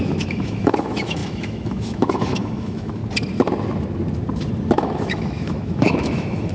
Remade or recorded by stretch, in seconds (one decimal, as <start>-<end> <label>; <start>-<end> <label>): 0.0-3.0 remade; 3.0-4.7 recorded; 4.7-6.5 remade